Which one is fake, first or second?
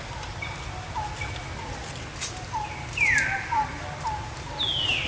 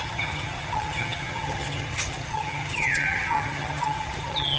second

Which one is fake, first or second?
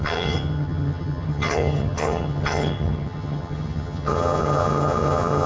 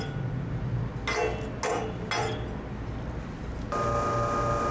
first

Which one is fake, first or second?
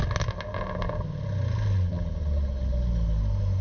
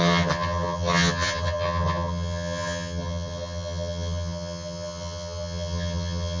second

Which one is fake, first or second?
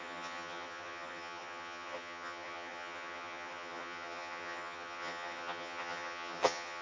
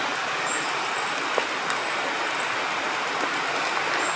first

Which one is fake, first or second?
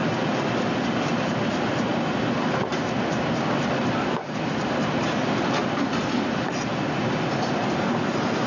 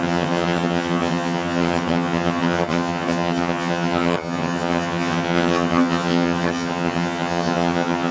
second